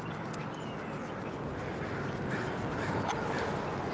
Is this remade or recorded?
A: recorded